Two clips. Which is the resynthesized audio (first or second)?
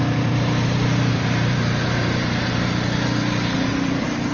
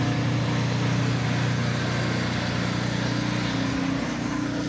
first